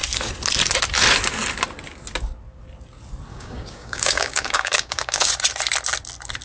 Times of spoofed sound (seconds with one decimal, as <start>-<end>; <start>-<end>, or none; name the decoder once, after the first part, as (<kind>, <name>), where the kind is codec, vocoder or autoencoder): 3.3-5.3 (codec, DAC)